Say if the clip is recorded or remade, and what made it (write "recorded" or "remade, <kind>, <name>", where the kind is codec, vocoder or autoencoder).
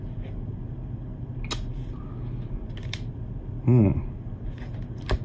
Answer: recorded